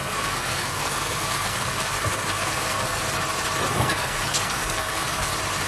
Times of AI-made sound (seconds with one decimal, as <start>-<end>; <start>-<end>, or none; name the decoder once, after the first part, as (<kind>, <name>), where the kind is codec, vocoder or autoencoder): 0.0-3.0 (codec, SNAC); 3.7-5.3